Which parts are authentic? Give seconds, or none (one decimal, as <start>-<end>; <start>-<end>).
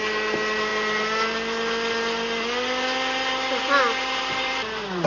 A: 0.0-5.1